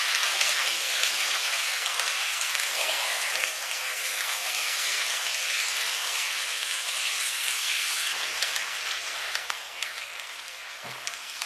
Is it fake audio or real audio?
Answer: fake